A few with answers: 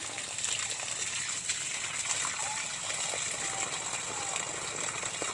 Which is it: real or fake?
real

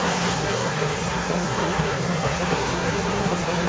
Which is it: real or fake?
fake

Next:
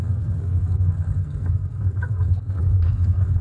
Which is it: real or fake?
fake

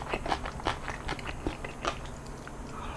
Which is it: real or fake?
real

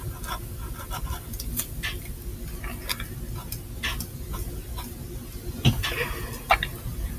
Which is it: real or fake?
real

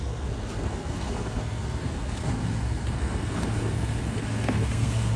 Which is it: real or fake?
fake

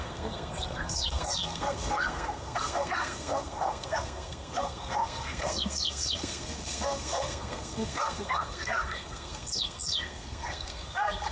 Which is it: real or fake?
fake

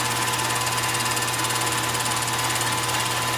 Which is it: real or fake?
real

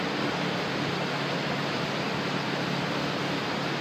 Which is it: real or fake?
real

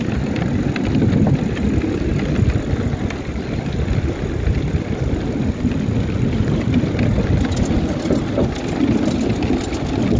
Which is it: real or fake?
real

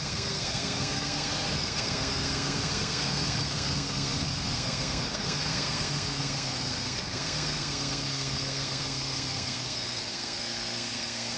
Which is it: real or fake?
fake